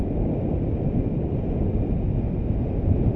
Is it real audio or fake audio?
real